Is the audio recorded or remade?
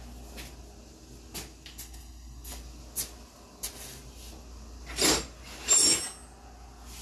recorded